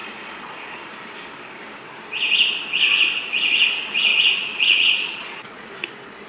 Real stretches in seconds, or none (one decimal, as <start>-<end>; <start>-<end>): 0.8-4.1; 5.7-6.3